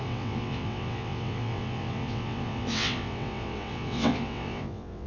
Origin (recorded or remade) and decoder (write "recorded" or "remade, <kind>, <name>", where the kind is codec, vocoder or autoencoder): remade, vocoder, WaveNeXt